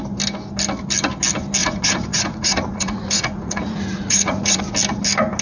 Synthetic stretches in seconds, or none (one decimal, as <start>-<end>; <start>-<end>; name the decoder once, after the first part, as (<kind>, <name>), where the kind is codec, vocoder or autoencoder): 1.6-4.6 (vocoder, Vocos)